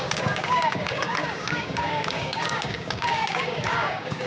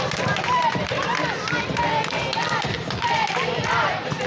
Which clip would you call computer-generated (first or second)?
first